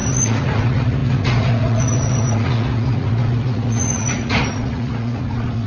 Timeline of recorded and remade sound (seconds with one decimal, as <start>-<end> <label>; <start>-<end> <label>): 0.0-5.7 remade